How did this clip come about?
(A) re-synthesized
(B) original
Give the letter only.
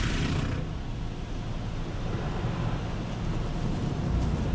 B